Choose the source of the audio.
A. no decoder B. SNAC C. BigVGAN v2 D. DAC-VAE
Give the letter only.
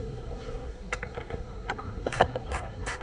B